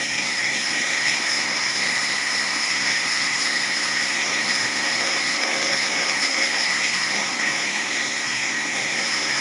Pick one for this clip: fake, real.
fake